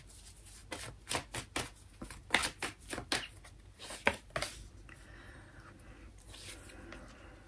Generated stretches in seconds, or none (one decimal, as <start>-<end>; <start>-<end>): none